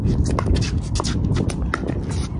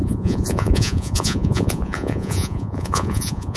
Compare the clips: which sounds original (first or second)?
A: first